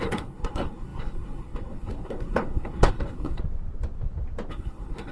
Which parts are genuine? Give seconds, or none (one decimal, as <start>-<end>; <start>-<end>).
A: 3.4-4.5